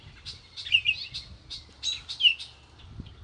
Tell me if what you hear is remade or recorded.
recorded